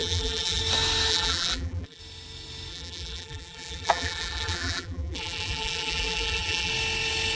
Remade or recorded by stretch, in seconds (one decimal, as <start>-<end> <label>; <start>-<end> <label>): 0.0-0.6 remade; 0.6-1.1 recorded; 1.1-2.0 remade; 2.0-2.7 recorded; 2.7-6.7 remade; 6.7-7.3 recorded